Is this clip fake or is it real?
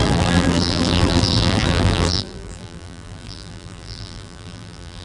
fake